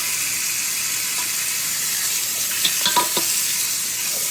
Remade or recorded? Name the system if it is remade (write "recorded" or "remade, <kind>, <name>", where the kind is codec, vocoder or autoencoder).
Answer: recorded